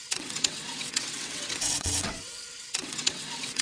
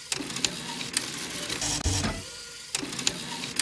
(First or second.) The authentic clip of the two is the second